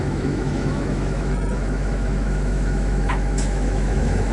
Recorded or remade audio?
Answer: remade